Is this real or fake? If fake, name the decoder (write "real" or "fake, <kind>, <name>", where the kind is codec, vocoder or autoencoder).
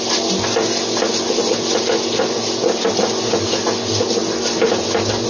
real